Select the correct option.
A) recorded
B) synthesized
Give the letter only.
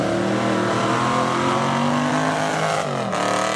A